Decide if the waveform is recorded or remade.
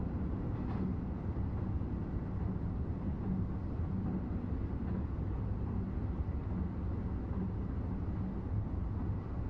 recorded